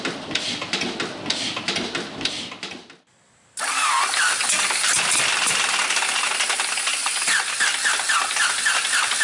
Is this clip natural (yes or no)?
yes